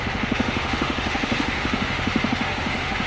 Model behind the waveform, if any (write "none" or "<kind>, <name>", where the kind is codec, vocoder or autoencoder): autoencoder, DAC-VAE